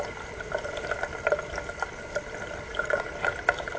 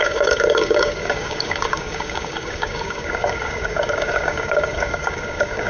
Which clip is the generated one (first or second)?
second